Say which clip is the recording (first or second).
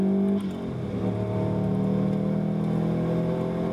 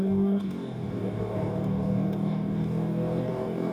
first